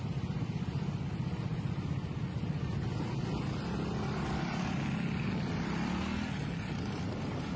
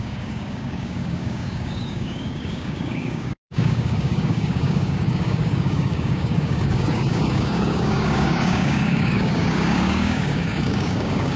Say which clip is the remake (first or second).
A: second